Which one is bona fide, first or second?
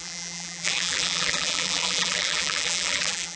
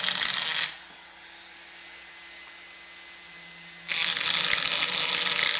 second